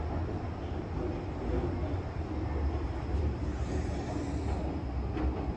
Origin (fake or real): real